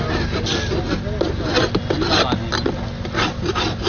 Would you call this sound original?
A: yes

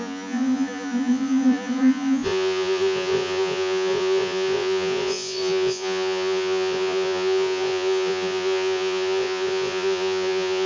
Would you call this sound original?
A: no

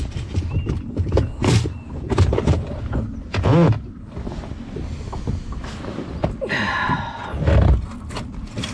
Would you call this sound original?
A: yes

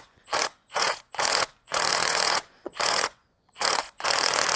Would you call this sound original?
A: no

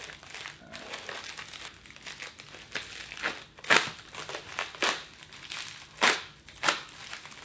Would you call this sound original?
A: yes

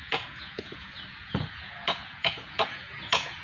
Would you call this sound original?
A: no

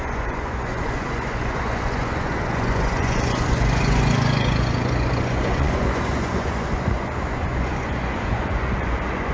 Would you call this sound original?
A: no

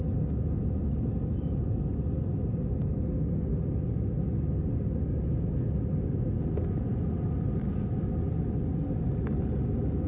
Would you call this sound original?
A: yes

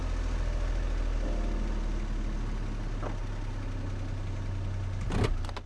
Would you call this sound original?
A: yes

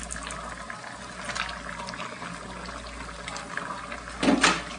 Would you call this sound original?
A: yes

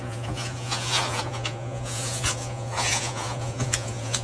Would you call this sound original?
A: no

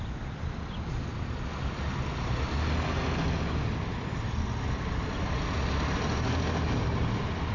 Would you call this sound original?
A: yes